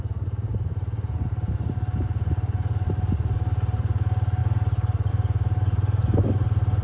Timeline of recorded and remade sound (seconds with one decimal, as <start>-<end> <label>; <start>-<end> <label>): 0.0-6.8 recorded